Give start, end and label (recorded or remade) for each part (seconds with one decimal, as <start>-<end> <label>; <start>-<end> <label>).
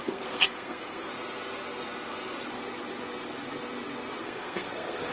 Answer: 0.0-1.1 remade; 1.1-4.2 recorded; 4.2-5.1 remade